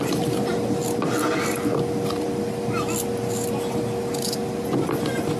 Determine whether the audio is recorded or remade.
recorded